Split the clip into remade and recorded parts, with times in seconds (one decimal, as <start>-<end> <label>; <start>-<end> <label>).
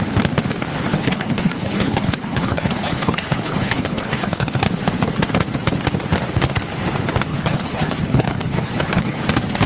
0.0-0.9 recorded; 0.9-4.6 remade; 4.6-7.3 recorded; 7.3-9.2 remade; 9.2-9.7 recorded